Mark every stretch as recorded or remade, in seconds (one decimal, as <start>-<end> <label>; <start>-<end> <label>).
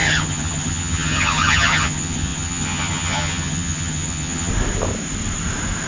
0.0-4.5 remade; 4.5-5.9 recorded